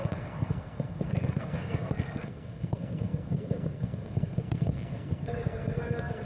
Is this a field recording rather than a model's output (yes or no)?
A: no